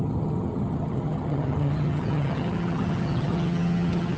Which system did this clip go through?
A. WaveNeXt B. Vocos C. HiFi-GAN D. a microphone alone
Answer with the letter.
C